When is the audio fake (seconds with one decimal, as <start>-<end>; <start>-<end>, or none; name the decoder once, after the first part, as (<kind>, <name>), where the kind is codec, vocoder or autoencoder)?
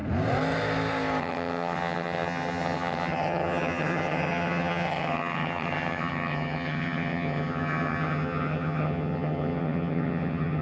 1.2-10.6 (vocoder, HiFi-GAN)